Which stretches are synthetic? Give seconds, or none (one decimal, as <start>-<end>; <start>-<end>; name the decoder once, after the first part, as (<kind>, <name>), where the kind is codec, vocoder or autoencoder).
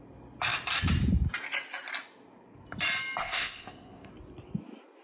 3.2-4.1 (codec, ZipCodec)